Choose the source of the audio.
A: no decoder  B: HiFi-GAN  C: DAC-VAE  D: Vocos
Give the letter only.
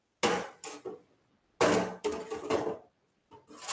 A